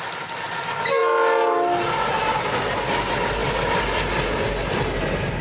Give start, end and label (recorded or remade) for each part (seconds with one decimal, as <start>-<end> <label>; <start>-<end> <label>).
0.0-5.4 recorded